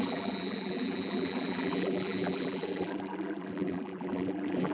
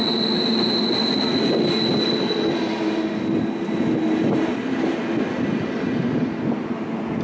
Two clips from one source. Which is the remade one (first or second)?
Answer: first